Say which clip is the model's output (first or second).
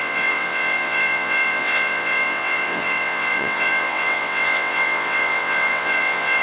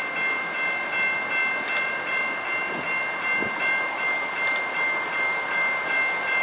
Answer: first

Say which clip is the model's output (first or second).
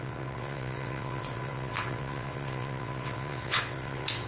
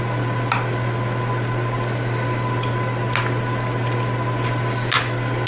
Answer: first